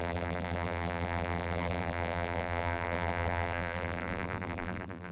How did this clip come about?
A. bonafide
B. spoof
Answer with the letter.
B